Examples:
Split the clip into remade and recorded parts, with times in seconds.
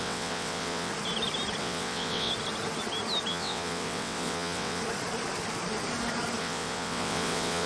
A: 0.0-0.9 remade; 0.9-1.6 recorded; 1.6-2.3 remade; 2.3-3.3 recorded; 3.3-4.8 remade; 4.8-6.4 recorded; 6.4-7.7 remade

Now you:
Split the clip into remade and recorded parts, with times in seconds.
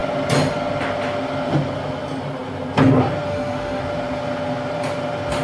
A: 0.0-3.3 recorded; 3.3-3.8 remade; 3.8-5.4 recorded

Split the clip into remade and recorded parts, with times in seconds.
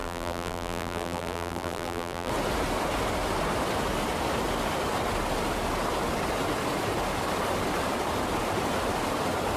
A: 0.0-2.3 remade; 2.3-9.6 recorded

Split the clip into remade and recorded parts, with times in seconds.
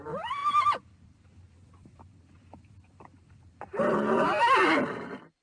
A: 0.0-3.7 remade; 3.7-4.9 recorded; 4.9-5.4 remade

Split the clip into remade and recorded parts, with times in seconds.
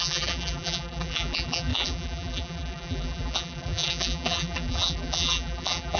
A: 0.0-6.0 remade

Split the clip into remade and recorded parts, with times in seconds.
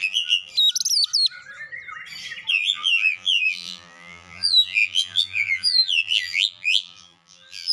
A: 0.0-0.5 remade; 0.5-2.5 recorded; 2.5-7.7 remade